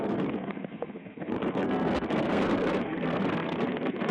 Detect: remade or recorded remade